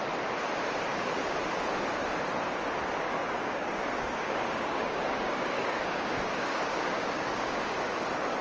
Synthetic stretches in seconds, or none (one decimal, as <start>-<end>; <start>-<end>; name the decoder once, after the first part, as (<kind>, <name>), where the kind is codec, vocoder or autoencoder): 0.9-1.4 (codec, DAC); 3.2-7.9